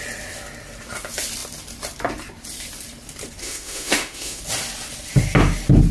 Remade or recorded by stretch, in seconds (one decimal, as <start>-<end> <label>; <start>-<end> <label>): 0.0-3.4 recorded; 3.4-4.4 remade; 4.4-5.9 recorded